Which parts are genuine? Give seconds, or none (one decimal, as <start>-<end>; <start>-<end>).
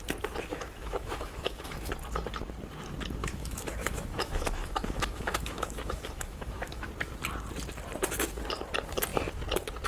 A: 0.0-0.5; 1.9-3.2; 6.9-9.9